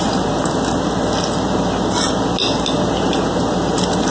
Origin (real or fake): real